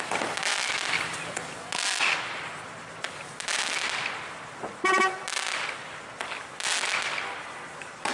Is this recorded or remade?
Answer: recorded